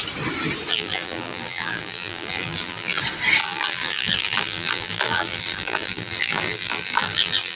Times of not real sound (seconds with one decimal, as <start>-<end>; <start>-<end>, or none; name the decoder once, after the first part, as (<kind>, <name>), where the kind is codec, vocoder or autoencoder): 0.7-3.0 (vocoder, BigVGAN v2); 3.4-7.6